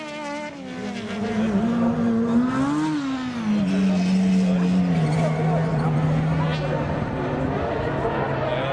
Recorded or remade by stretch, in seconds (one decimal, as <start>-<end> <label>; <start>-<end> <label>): 0.0-8.7 recorded